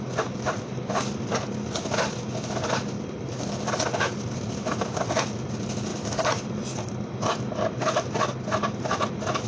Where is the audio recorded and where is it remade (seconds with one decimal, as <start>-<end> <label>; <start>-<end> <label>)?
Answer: 0.0-9.5 recorded